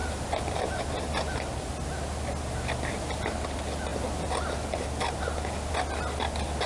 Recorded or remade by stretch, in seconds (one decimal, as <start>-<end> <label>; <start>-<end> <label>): 0.0-6.7 recorded